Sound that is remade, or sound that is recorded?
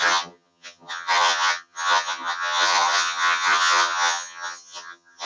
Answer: remade